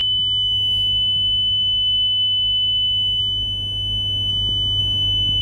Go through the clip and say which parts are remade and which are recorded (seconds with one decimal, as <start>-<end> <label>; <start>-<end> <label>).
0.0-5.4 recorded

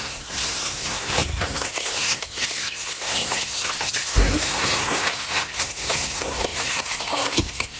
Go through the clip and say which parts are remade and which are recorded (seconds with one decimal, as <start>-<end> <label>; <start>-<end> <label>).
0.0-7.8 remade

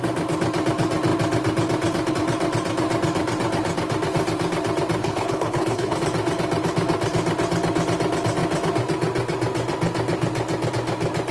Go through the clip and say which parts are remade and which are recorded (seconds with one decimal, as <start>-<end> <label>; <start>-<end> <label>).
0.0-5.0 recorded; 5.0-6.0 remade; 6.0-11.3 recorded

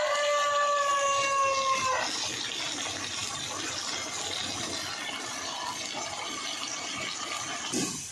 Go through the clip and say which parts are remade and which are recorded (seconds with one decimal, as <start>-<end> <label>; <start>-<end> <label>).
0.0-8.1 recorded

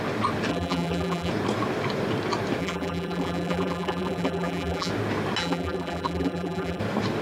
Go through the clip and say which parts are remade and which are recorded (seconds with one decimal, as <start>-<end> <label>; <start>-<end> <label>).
0.0-0.5 recorded; 0.5-1.3 remade; 1.3-2.6 recorded; 2.6-4.9 remade; 4.9-5.4 recorded; 5.4-6.8 remade; 6.8-7.2 recorded

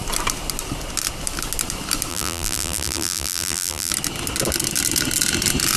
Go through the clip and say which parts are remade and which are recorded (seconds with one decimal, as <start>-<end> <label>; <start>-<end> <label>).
0.0-2.1 recorded; 2.1-3.9 remade; 3.9-5.8 recorded

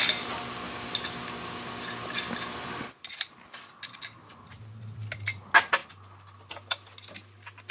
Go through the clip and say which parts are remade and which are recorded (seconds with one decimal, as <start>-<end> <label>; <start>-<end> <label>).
0.0-7.7 recorded